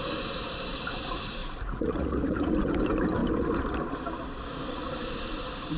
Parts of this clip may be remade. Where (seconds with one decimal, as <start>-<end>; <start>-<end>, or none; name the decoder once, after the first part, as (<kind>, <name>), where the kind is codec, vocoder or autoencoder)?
1.4-2.5 (vocoder, Vocos)